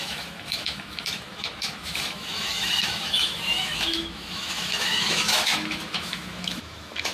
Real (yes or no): no